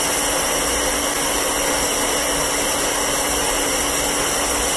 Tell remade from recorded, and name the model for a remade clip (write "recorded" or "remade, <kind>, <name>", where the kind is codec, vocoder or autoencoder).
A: recorded